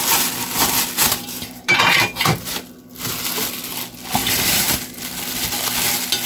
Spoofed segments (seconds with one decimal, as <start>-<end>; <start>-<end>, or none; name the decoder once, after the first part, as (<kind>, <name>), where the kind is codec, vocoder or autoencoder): 1.0-1.8 (vocoder, BigVGAN v2); 4.2-4.8